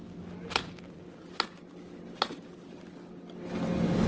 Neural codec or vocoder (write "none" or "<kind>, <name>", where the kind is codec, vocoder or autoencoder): none